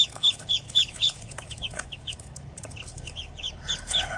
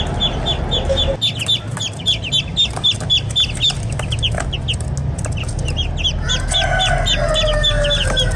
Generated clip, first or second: first